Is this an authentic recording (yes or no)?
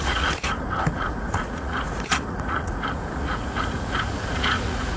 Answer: no